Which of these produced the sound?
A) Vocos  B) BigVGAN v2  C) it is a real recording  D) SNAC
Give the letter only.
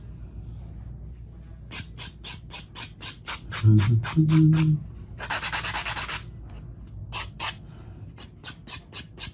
C